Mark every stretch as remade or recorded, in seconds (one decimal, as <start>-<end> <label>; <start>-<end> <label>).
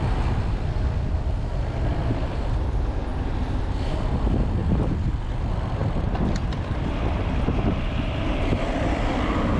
0.0-1.9 recorded; 1.9-2.6 remade; 2.6-3.1 recorded; 3.1-3.6 remade; 3.6-4.6 recorded; 4.6-5.3 remade; 5.3-9.6 recorded